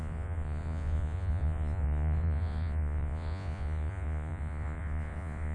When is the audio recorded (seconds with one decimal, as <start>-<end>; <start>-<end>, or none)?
none